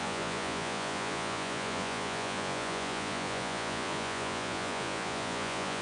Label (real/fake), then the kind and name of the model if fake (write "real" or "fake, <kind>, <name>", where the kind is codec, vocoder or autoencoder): fake, vocoder, Vocos